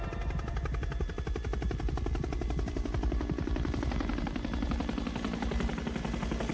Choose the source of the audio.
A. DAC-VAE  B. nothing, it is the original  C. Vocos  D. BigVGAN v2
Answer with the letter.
B